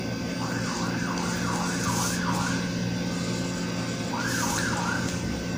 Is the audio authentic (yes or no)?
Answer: yes